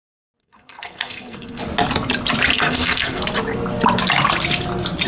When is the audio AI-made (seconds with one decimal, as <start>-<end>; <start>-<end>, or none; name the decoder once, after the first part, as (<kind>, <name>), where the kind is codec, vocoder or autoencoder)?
0.4-1.6 (codec, SNAC); 2.5-3.2